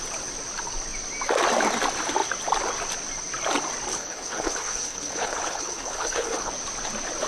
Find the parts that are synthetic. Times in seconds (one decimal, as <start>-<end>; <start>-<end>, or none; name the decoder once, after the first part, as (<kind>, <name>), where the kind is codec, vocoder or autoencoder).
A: 3.9-6.5 (codec, HILCodec)